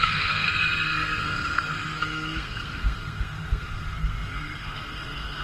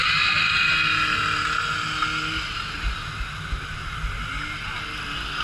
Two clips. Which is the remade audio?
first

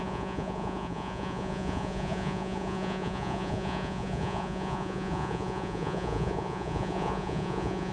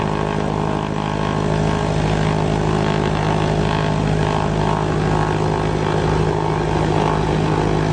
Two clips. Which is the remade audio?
first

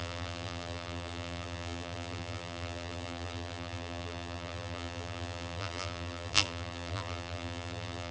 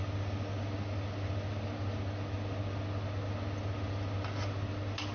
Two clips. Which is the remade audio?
first